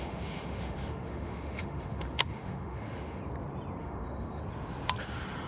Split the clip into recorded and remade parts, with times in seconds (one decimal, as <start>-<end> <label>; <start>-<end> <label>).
0.0-3.2 remade; 3.2-3.8 recorded; 3.8-4.4 remade; 4.4-5.5 recorded